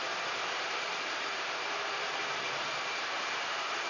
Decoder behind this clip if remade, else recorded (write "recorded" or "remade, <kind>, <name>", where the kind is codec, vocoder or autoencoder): remade, vocoder, BigVGAN v2